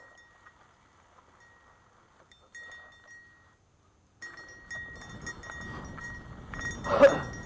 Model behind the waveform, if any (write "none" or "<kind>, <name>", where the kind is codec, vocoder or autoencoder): none